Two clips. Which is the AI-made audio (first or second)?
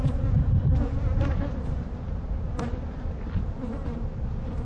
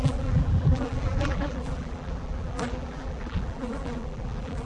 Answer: second